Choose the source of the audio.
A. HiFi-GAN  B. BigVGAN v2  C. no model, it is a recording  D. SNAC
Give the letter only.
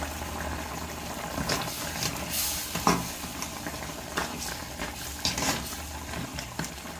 C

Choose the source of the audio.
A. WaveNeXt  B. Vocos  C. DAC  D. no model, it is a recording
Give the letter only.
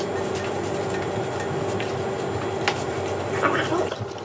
D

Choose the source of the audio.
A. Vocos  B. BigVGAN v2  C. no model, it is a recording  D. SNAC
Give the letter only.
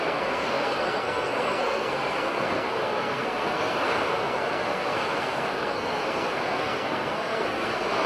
D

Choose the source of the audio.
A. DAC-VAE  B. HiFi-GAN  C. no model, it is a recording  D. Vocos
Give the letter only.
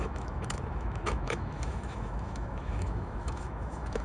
A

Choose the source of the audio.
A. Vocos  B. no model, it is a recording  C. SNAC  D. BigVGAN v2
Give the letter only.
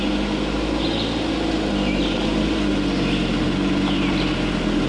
B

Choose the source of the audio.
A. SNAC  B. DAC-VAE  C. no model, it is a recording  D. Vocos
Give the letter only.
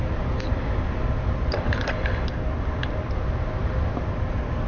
C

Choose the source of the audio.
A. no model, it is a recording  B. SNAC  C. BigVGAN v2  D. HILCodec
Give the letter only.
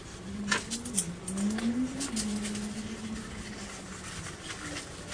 A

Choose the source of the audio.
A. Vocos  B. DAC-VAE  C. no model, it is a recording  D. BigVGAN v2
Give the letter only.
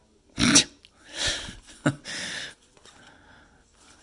C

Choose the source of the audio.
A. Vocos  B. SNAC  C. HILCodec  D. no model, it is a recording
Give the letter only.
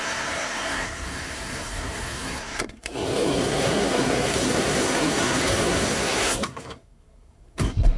B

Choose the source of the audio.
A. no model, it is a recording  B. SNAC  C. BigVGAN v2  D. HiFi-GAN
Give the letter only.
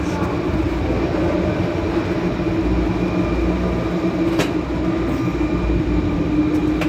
A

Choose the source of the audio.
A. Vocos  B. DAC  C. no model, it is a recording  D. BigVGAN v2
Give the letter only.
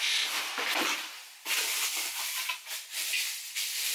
C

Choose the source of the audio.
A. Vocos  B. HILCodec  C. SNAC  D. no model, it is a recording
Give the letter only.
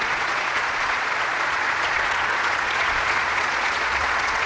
A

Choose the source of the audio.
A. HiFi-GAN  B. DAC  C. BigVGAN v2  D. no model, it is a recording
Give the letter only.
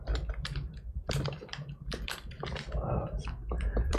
C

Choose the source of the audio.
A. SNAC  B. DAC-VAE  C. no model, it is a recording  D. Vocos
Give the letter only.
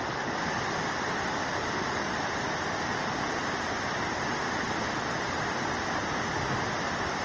C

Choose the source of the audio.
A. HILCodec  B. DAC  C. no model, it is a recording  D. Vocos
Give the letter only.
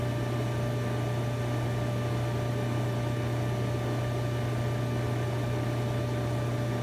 C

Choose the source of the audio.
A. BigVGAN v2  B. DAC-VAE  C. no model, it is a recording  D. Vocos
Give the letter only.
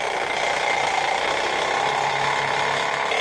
C